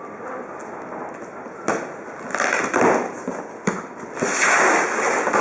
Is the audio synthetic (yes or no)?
no